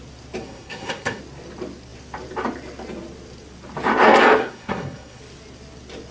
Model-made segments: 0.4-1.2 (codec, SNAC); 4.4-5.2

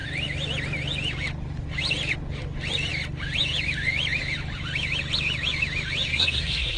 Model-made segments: 6.1-6.8 (codec, SNAC)

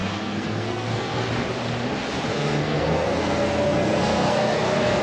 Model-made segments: 0.0-1.3 (codec, SNAC); 2.3-5.0

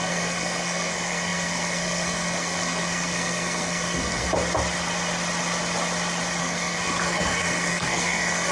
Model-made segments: 0.0-4.3 (codec, SNAC); 6.4-8.5

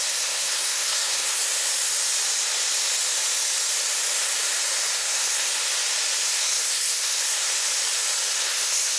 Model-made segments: 0.0-1.7 (codec, SNAC); 4.9-5.5; 6.3-7.5; 8.4-9.0